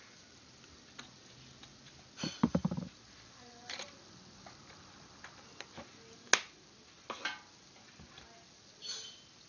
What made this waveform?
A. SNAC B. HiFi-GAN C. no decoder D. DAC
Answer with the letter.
C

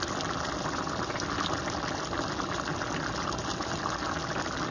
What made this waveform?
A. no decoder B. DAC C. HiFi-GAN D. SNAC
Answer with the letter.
A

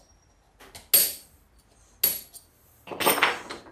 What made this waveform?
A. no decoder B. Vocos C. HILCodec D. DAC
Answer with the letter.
A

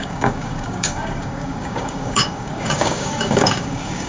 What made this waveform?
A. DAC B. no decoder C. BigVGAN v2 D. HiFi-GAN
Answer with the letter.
A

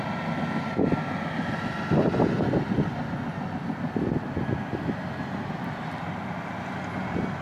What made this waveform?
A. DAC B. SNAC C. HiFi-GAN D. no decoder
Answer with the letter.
D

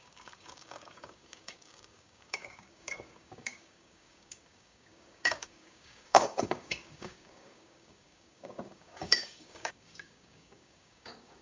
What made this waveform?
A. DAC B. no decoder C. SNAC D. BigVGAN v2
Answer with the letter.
A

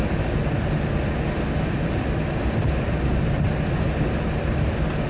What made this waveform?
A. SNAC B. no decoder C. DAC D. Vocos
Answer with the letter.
B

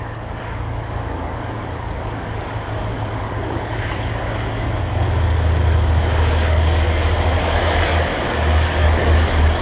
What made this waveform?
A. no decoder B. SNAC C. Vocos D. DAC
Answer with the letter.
D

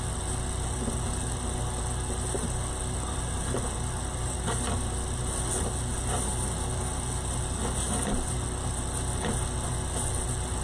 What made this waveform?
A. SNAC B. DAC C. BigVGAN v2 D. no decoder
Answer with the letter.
D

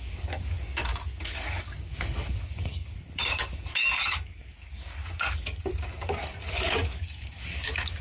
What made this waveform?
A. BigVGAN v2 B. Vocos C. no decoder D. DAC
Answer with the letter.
D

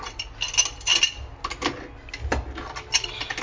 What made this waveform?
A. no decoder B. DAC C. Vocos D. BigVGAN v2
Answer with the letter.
A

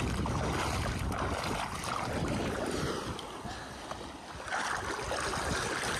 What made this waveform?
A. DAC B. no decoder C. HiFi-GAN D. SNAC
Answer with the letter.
B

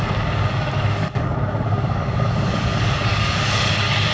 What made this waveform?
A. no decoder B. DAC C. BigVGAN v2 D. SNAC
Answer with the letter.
B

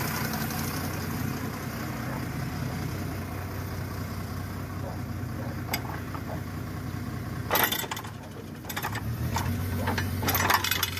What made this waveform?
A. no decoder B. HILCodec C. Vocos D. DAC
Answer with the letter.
A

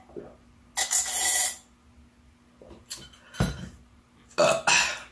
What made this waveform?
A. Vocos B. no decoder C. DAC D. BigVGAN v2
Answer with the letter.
B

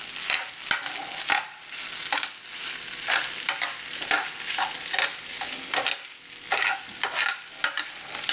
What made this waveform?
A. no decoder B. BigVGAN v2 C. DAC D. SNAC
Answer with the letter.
A